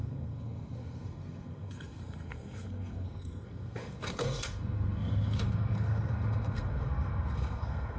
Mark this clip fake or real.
fake